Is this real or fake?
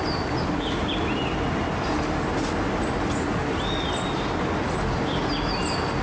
real